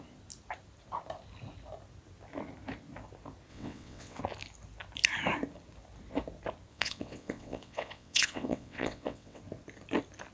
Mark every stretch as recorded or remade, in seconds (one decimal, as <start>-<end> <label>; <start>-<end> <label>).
0.0-3.5 recorded; 3.5-4.2 remade; 4.2-6.7 recorded; 6.7-9.4 remade; 9.4-10.3 recorded